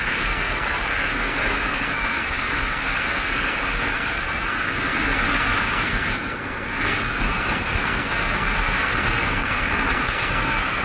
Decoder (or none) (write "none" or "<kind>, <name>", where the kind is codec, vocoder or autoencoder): codec, SNAC